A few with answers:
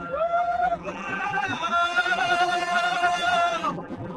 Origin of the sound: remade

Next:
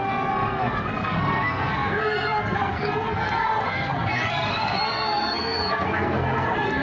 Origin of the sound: remade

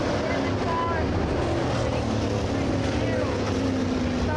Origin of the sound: recorded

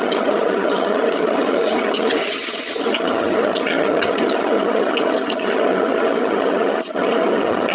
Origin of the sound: remade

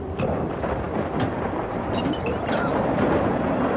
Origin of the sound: remade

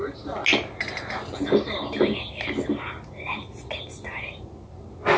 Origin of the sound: recorded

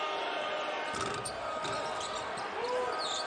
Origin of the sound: recorded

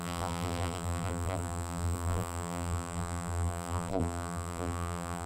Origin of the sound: remade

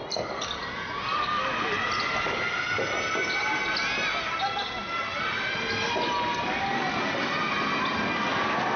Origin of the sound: recorded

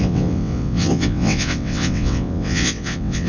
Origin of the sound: remade